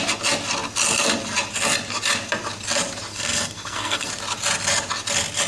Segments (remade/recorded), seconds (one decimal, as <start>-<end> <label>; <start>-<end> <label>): 0.0-3.1 recorded; 3.1-4.1 remade; 4.1-5.5 recorded